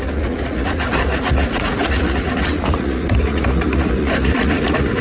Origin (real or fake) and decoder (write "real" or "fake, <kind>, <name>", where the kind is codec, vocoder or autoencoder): fake, vocoder, Vocos